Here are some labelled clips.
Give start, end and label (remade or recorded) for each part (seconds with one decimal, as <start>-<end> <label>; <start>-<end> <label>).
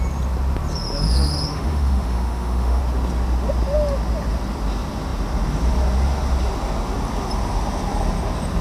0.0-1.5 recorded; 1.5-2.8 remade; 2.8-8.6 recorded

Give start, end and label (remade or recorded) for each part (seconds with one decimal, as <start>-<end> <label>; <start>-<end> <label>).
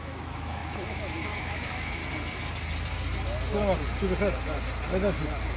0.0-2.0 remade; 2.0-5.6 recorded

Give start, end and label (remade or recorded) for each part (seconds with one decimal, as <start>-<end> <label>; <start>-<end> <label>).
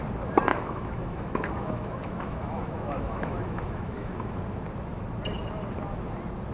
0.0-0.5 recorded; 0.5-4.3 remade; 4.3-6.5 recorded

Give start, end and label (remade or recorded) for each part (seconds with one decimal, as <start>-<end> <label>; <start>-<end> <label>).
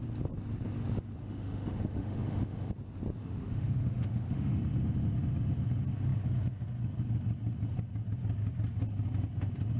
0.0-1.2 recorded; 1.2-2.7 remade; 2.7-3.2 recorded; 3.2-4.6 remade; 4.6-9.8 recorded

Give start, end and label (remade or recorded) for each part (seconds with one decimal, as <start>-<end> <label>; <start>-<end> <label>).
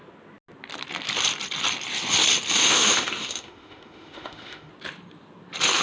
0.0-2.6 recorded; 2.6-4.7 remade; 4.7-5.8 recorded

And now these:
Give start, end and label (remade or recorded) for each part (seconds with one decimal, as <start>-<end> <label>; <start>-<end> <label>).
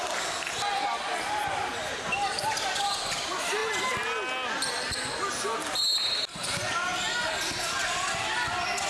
0.0-8.9 recorded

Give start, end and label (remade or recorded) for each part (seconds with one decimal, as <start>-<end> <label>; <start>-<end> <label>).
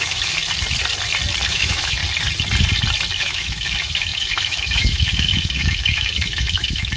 0.0-0.4 remade; 0.4-1.5 recorded; 1.5-2.0 remade; 2.0-3.2 recorded; 3.2-7.0 remade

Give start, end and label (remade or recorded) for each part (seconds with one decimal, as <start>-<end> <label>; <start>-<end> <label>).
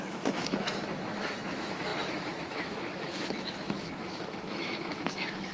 0.0-5.5 remade